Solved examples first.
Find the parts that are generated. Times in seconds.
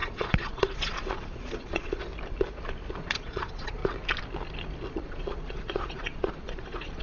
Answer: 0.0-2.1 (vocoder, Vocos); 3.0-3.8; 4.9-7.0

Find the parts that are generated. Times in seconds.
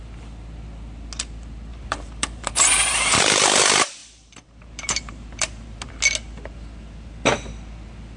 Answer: 1.7-3.2 (vocoder, BigVGAN v2); 4.0-5.9